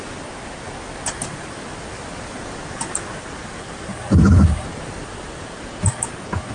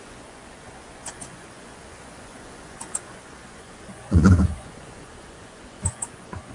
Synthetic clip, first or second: second